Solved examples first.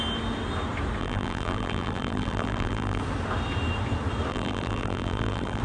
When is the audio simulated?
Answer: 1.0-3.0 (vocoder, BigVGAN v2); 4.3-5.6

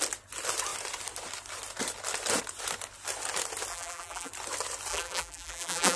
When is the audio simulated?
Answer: 3.7-4.3 (vocoder, BigVGAN v2); 4.9-6.0